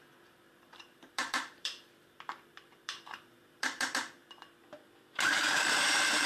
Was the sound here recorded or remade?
remade